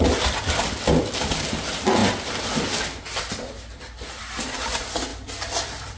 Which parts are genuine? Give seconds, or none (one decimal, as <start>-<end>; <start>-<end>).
0.0-2.0; 4.4-5.1